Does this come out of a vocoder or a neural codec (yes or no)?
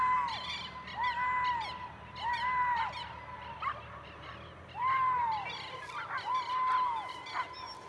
no